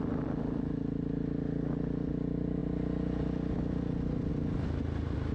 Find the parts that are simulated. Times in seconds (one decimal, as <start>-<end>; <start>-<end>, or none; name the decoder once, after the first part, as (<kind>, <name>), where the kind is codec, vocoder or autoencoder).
none